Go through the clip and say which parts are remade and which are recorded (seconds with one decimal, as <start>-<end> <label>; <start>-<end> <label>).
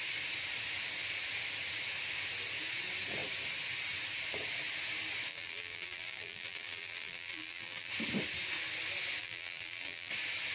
0.0-5.3 recorded; 5.3-7.9 remade; 7.9-9.2 recorded; 9.2-10.1 remade; 10.1-10.5 recorded